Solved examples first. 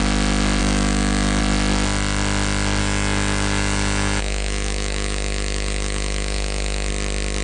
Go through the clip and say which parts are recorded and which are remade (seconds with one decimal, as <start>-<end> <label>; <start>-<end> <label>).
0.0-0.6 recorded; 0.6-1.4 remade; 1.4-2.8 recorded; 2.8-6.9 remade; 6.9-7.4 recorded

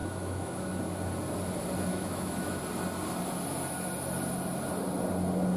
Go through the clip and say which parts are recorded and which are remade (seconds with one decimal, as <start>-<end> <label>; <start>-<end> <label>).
0.0-0.8 remade; 0.8-1.9 recorded; 1.9-2.6 remade; 2.6-5.6 recorded

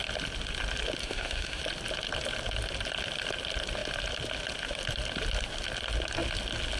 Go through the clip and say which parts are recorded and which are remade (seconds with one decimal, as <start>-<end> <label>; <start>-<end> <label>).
0.0-1.0 recorded; 1.0-1.6 remade; 1.6-6.8 recorded

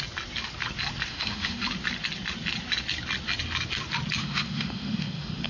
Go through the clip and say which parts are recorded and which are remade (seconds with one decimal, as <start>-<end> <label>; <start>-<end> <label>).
0.0-1.1 recorded; 1.1-1.6 remade; 1.6-4.2 recorded; 4.2-5.5 remade

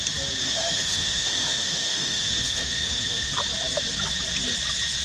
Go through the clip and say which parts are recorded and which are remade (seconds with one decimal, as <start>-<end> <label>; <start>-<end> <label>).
0.0-0.4 recorded; 0.4-3.3 remade; 3.3-5.0 recorded